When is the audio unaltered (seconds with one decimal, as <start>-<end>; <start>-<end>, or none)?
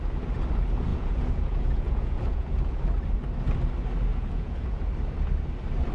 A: 0.0-0.9; 2.8-4.1; 4.8-5.9